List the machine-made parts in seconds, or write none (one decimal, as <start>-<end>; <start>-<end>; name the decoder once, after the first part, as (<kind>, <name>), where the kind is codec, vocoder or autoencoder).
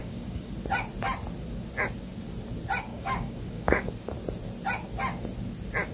0.0-0.5 (codec, DAC); 2.9-3.9